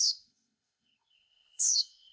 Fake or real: fake